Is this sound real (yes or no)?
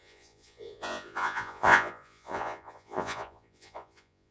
no